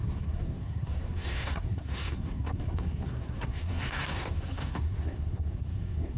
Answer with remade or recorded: remade